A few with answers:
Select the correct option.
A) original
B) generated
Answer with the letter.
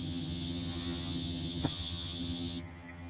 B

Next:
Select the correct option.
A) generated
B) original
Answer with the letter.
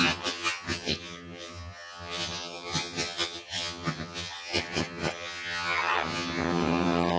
A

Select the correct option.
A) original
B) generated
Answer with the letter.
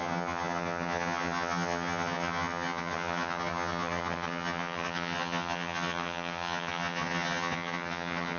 B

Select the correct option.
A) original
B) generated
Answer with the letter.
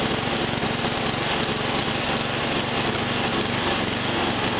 A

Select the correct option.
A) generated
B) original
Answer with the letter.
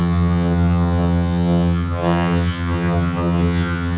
A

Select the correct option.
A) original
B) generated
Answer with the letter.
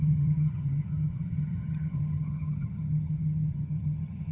B